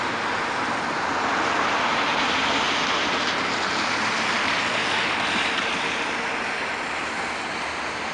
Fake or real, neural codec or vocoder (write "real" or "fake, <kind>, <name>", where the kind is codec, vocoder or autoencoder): real